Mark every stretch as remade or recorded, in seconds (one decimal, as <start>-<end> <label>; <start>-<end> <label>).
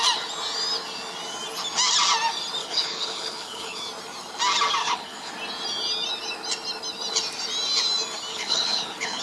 0.0-2.6 recorded; 2.6-3.8 remade; 3.8-4.8 recorded; 4.8-5.3 remade; 5.3-8.3 recorded; 8.3-9.2 remade